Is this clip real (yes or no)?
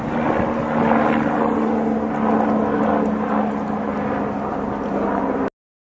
yes